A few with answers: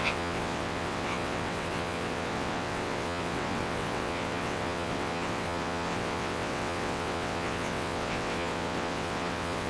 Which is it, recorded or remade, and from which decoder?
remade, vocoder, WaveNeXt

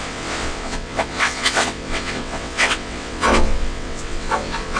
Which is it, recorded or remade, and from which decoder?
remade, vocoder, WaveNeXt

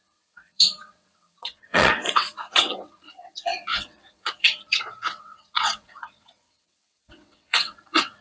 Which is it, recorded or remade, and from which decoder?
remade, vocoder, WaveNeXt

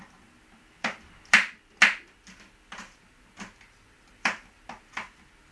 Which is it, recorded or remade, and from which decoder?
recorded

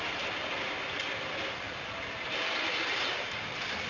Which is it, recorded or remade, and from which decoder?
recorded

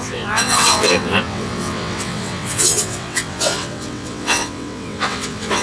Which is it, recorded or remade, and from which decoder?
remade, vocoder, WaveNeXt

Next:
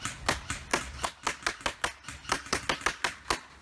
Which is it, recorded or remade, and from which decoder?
recorded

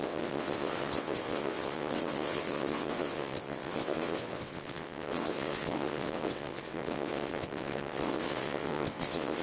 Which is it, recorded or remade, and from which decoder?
remade, vocoder, WaveNeXt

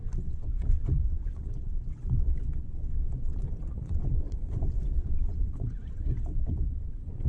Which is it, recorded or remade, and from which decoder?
remade, vocoder, WaveNeXt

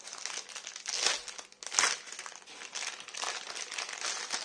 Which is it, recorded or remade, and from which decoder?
recorded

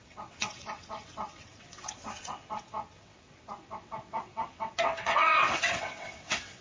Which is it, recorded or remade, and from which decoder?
remade, vocoder, WaveNeXt